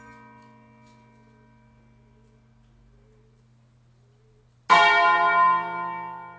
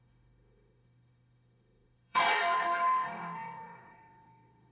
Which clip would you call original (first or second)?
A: first